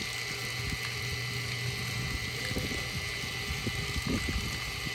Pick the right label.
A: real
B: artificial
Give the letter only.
A